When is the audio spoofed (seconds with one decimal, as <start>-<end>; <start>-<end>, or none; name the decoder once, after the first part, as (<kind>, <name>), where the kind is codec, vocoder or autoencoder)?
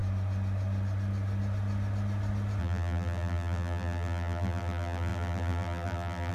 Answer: 2.6-6.3 (vocoder, BigVGAN v2)